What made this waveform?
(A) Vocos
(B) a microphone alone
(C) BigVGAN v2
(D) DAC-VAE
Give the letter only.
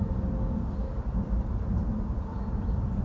C